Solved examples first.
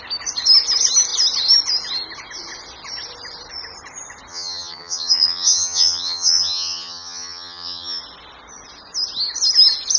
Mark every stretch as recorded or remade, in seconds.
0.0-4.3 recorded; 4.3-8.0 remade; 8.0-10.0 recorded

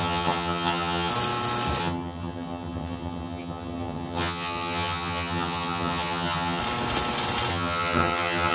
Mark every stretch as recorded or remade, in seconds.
0.0-1.1 remade; 1.1-1.8 recorded; 1.8-6.6 remade; 6.6-7.5 recorded; 7.5-8.5 remade

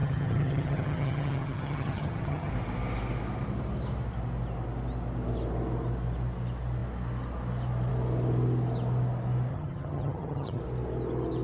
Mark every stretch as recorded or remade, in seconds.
0.0-2.5 remade; 2.5-9.5 recorded; 9.5-10.6 remade; 10.6-11.4 recorded

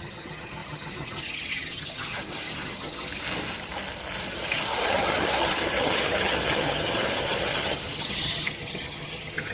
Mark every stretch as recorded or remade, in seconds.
0.0-3.1 remade; 3.1-4.3 recorded; 4.3-9.5 remade

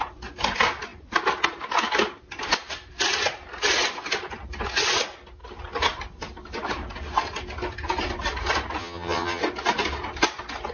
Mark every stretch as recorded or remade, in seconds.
0.0-8.8 recorded; 8.8-9.4 remade; 9.4-10.7 recorded